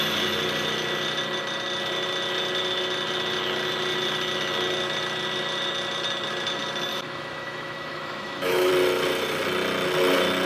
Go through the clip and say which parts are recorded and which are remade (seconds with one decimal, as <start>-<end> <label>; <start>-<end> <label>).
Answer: 0.0-6.9 recorded; 6.9-8.7 remade; 8.7-10.5 recorded